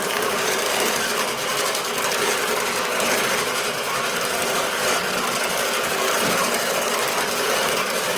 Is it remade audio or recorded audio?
remade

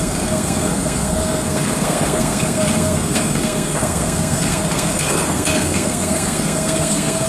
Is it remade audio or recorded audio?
remade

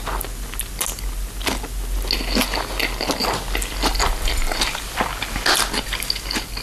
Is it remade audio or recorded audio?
recorded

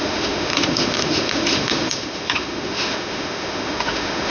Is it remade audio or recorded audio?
remade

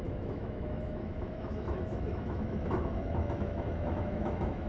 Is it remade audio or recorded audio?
remade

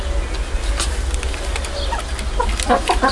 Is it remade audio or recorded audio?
recorded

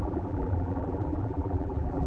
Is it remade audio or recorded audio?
remade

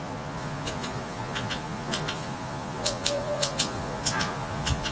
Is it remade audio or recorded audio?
remade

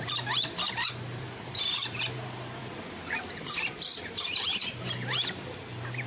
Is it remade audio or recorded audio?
remade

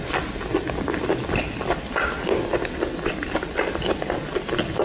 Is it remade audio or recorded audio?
recorded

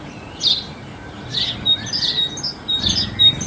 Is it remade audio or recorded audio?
recorded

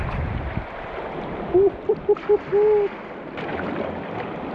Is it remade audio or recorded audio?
recorded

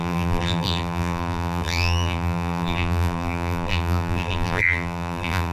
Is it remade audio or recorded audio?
remade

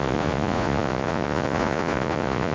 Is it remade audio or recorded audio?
remade